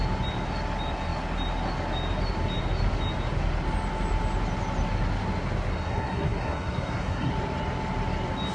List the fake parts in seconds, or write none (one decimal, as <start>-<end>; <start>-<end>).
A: 5.7-7.3